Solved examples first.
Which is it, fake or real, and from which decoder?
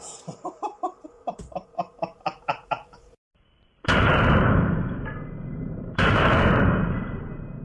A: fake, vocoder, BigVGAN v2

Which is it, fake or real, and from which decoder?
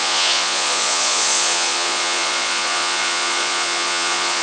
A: fake, vocoder, Vocos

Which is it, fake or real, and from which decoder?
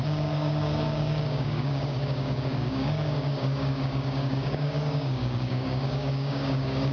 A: fake, codec, DAC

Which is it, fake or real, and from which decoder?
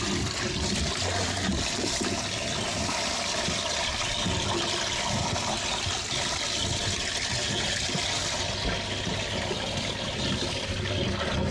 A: real